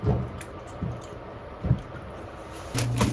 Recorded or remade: recorded